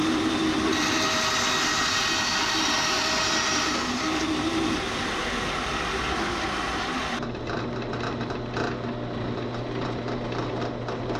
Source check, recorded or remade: recorded